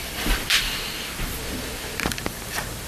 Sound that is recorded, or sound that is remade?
remade